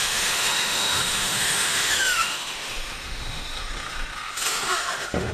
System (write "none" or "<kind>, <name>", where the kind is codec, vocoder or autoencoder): autoencoder, DAC-VAE